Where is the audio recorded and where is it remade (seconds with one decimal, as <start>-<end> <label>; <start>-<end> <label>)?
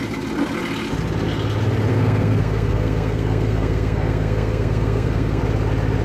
0.0-1.9 recorded; 1.9-5.4 remade; 5.4-6.0 recorded